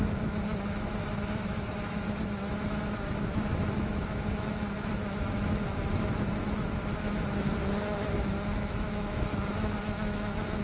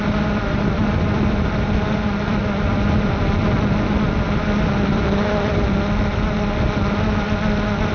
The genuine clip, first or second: second